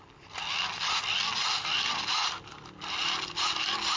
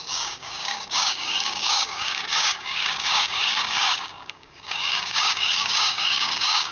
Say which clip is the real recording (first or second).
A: first